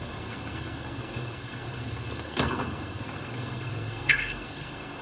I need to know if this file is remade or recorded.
remade